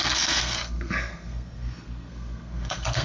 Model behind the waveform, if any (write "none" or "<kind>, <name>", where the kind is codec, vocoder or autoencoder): codec, SNAC